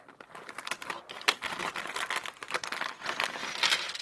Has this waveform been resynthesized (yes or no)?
no